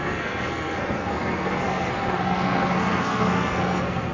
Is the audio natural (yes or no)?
no